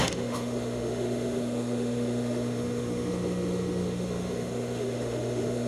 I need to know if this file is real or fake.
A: fake